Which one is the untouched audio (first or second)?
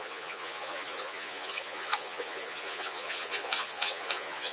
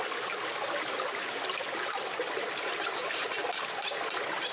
second